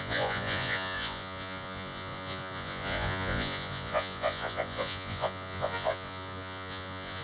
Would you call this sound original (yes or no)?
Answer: no